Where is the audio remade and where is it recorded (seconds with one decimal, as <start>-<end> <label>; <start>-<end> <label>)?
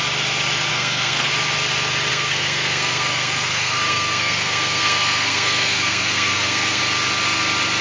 0.0-0.7 recorded; 0.7-1.3 remade; 1.3-2.1 recorded; 2.1-6.8 remade; 6.8-7.8 recorded